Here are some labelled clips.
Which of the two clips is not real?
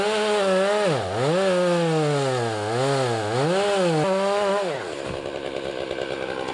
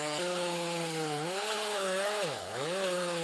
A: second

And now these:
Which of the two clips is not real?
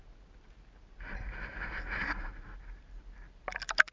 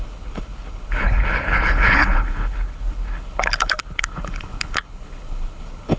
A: second